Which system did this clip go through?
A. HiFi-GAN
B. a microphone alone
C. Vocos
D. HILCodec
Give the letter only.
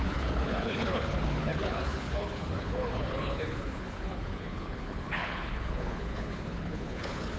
D